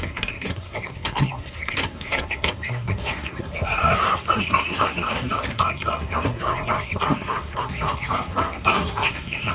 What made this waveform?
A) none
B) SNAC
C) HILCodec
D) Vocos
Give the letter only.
B